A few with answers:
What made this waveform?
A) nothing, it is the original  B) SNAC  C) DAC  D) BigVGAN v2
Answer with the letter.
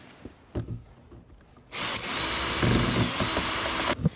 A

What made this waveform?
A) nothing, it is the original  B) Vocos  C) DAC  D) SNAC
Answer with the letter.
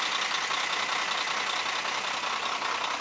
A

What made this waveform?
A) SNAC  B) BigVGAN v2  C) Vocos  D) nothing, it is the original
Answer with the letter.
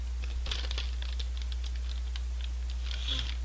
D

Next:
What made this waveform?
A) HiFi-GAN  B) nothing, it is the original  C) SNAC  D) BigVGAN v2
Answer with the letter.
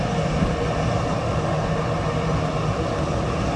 B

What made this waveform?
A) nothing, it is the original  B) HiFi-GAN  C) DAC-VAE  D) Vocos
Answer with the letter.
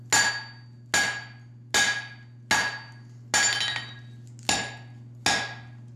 A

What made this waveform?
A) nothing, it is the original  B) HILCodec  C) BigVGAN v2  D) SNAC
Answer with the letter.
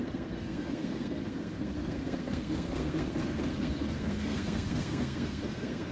D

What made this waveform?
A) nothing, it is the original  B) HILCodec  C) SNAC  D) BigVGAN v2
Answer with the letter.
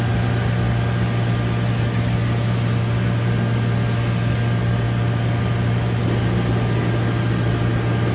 A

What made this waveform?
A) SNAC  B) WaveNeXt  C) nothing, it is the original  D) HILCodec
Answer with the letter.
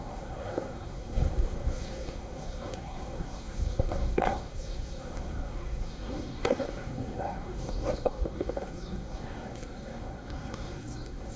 A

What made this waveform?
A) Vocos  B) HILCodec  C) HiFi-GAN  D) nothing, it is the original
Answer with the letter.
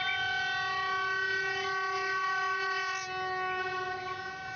D